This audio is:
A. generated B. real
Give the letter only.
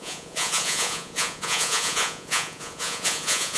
A